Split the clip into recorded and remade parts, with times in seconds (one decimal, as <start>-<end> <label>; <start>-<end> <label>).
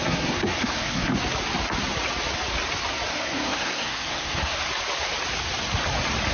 0.0-1.1 remade; 1.1-3.1 recorded; 3.1-4.7 remade; 4.7-6.3 recorded